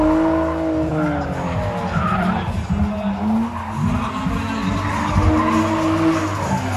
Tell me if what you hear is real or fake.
real